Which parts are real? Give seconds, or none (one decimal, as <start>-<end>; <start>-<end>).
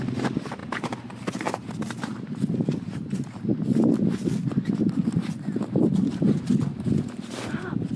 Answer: 3.5-6.4